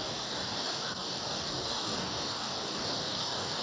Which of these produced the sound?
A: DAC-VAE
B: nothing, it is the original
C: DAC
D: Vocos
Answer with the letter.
C